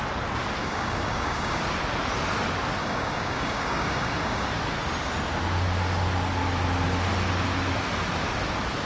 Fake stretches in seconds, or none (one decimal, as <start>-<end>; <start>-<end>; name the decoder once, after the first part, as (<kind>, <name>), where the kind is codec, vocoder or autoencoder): 0.6-1.6 (codec, DAC); 2.8-4.5